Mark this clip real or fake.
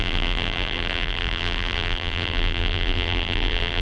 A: fake